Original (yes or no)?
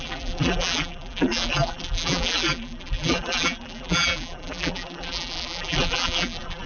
no